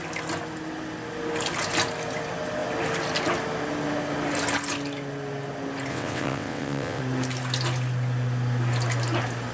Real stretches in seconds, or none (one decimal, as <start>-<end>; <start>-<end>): 0.0-5.9; 7.0-9.5

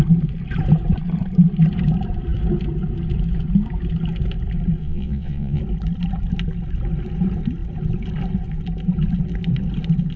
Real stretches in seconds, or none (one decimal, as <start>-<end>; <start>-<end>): 0.0-4.8; 5.6-10.2